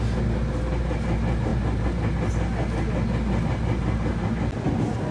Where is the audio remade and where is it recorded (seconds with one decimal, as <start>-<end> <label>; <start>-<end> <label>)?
0.0-5.1 recorded